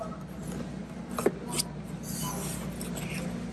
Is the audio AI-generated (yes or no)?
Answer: no